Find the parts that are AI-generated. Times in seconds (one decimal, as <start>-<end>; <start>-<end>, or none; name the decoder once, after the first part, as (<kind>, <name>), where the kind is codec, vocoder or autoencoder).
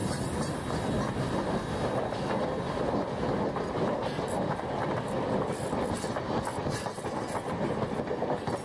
none